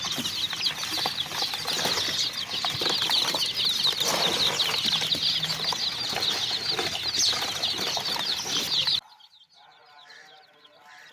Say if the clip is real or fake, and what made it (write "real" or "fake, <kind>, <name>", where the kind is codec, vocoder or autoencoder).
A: real